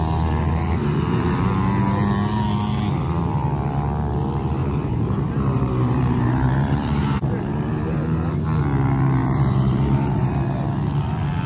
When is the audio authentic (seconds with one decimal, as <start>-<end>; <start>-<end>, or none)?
0.0-4.6; 8.6-9.2; 10.3-11.5